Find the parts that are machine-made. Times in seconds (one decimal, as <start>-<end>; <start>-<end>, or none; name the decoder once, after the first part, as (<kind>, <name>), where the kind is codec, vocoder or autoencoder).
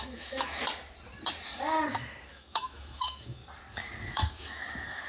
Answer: 0.0-0.6 (autoencoder, DAC-VAE); 2.3-3.4; 4.1-5.1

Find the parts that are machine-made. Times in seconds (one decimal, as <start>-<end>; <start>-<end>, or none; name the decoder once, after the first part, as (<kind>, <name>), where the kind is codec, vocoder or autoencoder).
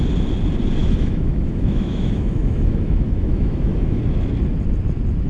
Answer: 0.8-4.0 (autoencoder, DAC-VAE)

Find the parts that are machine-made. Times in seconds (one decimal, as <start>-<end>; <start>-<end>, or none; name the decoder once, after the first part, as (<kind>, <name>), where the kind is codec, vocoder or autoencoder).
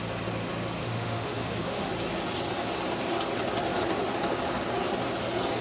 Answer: 0.8-1.9 (autoencoder, DAC-VAE)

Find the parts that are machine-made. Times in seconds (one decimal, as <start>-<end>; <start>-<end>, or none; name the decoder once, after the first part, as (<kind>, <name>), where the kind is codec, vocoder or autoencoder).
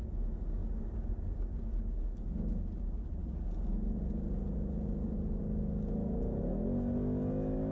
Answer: none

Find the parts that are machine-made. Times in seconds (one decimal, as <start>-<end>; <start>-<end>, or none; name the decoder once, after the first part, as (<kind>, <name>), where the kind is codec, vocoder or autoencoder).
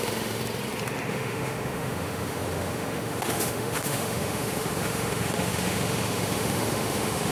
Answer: 0.0-0.4 (autoencoder, DAC-VAE); 1.1-7.3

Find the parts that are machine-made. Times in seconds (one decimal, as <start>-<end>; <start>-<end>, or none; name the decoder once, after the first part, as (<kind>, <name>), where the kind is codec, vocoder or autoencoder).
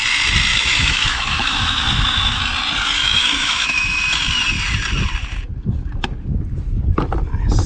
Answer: 0.5-2.4 (autoencoder, DAC-VAE); 3.0-4.0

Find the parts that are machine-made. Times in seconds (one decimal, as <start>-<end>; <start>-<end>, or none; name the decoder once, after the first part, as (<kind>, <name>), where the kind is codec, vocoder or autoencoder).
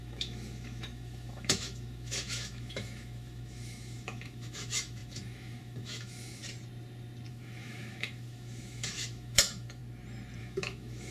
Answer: 0.0-6.4 (autoencoder, DAC-VAE); 7.3-9.8; 10.4-11.1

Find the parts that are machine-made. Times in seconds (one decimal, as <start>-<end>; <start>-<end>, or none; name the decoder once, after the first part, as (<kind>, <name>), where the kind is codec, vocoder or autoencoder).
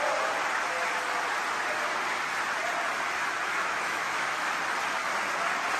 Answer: 3.5-4.5 (autoencoder, DAC-VAE)